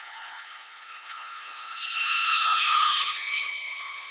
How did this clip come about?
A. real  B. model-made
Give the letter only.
B